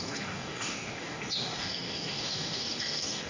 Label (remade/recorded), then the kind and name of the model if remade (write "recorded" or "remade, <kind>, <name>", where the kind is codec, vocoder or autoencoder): remade, codec, DAC